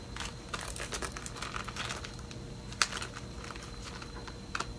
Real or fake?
real